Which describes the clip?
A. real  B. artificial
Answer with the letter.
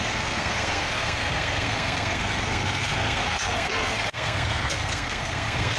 B